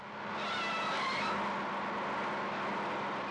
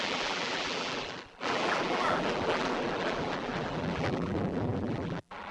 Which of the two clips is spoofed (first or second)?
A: second